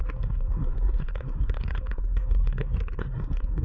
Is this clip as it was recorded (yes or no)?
no